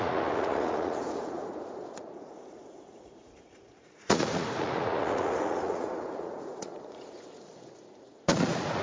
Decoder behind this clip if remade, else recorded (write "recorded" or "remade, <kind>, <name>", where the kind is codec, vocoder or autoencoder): remade, vocoder, Vocos